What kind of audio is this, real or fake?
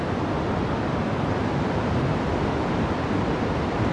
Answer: real